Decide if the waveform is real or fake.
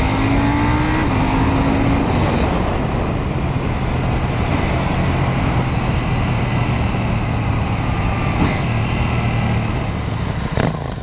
real